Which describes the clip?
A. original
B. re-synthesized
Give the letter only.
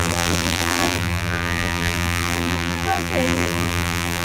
B